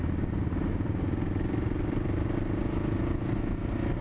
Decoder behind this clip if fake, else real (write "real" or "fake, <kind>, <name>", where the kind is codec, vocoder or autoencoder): real